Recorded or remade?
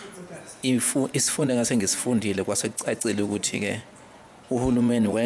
remade